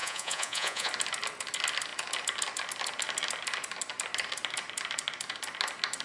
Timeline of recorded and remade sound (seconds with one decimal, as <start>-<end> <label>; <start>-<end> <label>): 0.0-0.9 remade; 0.9-6.0 recorded